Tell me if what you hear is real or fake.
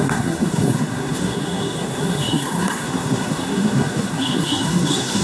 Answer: fake